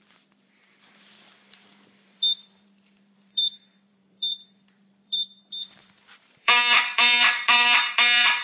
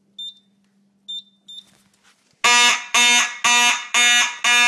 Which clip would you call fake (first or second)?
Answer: first